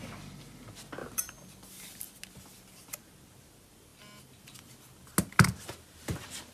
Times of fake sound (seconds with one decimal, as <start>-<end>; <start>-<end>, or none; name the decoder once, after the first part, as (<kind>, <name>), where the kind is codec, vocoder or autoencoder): 1.0-2.2 (vocoder, BigVGAN v2)